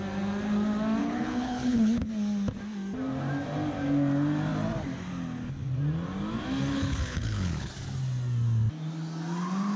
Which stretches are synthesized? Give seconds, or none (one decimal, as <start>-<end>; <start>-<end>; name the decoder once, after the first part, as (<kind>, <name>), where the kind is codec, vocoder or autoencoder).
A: 1.0-2.1 (codec, HILCodec); 6.7-7.7